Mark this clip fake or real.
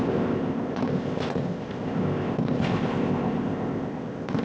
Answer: fake